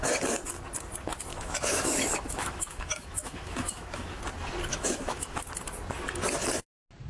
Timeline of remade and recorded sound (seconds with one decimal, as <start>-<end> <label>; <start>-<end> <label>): 0.0-1.3 recorded; 1.3-4.2 remade; 4.2-4.7 recorded; 4.7-5.4 remade; 5.4-7.1 recorded